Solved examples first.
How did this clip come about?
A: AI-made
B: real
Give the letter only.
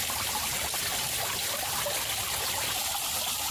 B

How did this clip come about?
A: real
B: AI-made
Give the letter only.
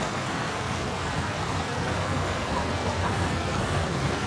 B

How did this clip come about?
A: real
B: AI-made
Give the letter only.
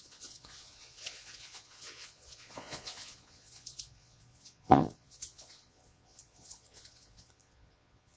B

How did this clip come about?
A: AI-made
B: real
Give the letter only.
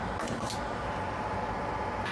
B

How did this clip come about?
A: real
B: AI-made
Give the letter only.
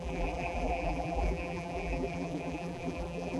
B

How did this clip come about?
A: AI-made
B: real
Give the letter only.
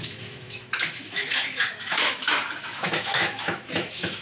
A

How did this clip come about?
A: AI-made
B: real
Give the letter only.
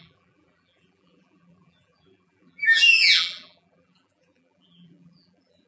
A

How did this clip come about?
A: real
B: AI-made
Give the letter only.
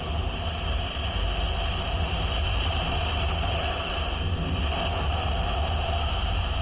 A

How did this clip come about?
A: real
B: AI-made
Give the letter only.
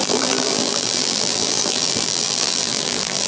B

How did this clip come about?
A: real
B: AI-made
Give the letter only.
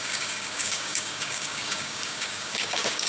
B